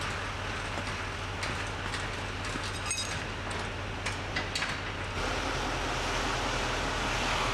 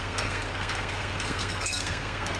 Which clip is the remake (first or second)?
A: second